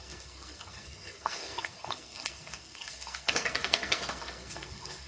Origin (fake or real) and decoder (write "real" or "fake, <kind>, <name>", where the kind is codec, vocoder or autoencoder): fake, codec, SNAC